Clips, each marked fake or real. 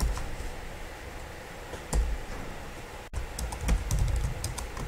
real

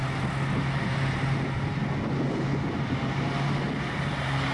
real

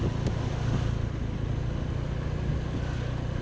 real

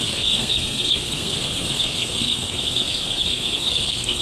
fake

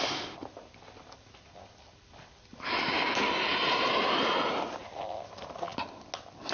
real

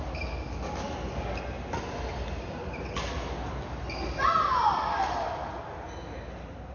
real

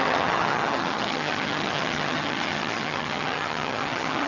fake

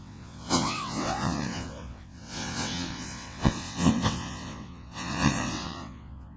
fake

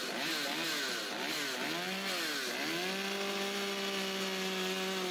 real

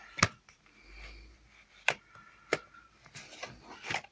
real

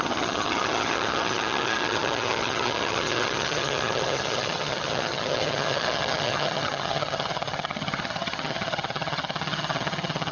fake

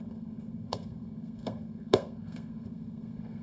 fake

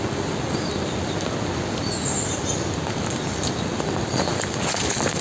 real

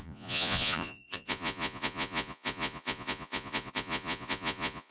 fake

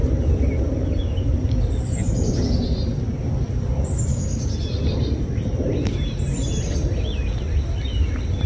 real